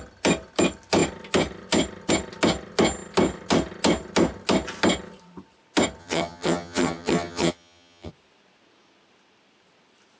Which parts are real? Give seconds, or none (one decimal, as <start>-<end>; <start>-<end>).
0.0-6.0; 8.1-10.2